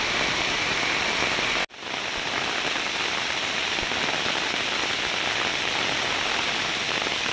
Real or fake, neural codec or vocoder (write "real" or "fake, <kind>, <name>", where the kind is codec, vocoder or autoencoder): real